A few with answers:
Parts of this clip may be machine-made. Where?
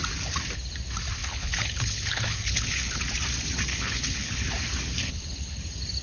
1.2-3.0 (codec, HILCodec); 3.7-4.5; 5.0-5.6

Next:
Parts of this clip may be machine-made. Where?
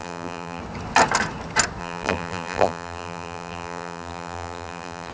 0.0-0.6 (vocoder, BigVGAN v2); 1.8-5.1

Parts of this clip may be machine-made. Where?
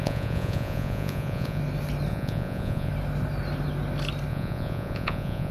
0.0-1.6 (vocoder, Vocos); 2.1-2.9; 4.3-5.5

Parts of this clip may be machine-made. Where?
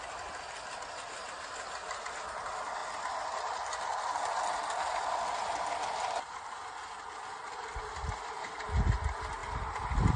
none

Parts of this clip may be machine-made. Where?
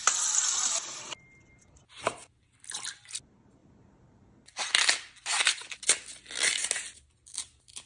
none